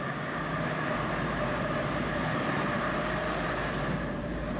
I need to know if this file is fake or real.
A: fake